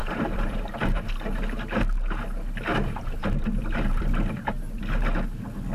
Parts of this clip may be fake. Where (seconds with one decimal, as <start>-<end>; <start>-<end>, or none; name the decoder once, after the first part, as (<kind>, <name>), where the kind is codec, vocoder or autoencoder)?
0.0-1.1 (vocoder, BigVGAN v2); 2.7-4.8